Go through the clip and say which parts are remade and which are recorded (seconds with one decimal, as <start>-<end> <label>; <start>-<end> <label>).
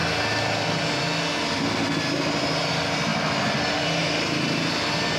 0.0-5.2 recorded